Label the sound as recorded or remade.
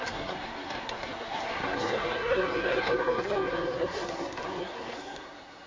remade